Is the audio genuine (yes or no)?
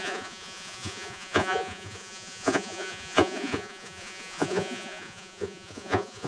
no